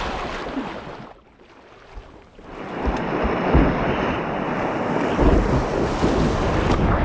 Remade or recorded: recorded